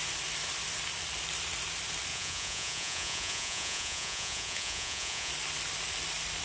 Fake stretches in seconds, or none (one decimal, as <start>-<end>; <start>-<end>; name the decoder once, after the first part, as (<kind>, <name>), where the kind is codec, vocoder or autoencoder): 2.1-5.3 (vocoder, Vocos)